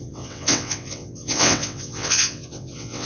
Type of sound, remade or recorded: remade